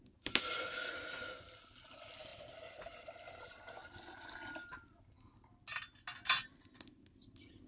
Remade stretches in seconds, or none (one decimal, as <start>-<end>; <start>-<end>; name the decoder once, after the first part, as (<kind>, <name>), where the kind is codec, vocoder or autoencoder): none